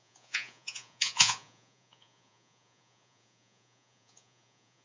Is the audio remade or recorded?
remade